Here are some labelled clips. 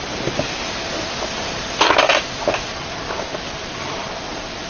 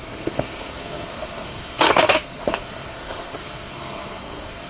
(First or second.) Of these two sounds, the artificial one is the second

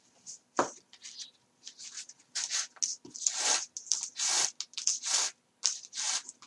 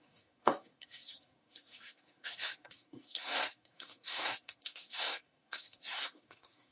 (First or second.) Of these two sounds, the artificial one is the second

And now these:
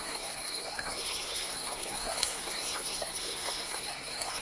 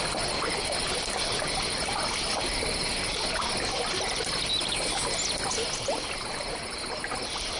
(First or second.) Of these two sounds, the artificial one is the first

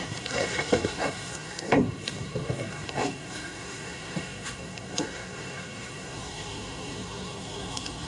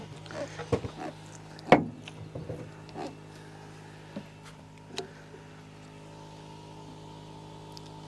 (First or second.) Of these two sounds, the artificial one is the first